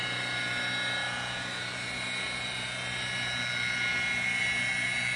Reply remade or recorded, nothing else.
recorded